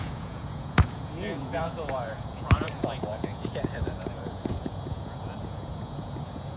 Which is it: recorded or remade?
remade